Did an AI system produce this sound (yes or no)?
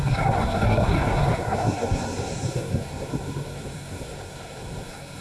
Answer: yes